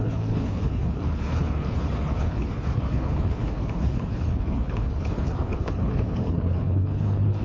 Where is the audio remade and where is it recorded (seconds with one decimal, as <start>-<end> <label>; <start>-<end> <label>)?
0.0-7.4 remade